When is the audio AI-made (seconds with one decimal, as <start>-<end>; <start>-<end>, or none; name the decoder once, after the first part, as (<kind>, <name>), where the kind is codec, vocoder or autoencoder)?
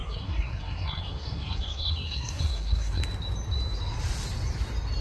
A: 0.0-3.0 (codec, SNAC)